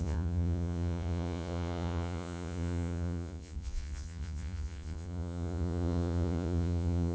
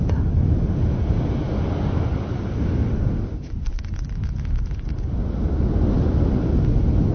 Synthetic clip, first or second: first